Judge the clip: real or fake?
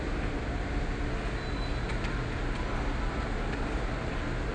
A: real